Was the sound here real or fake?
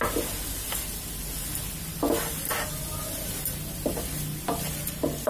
real